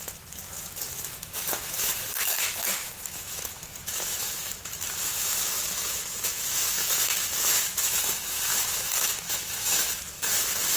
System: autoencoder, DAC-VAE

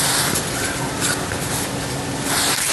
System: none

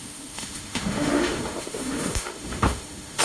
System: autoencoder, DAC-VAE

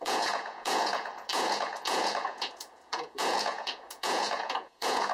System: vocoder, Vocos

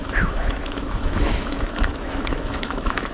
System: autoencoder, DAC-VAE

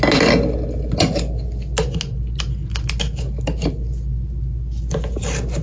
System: none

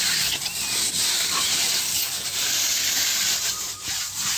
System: none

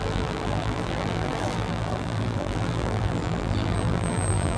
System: vocoder, BigVGAN v2